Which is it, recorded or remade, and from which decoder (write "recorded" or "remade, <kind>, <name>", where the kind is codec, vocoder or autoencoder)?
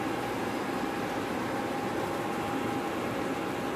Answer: recorded